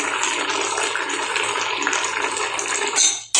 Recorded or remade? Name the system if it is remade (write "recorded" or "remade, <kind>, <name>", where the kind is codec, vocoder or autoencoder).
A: recorded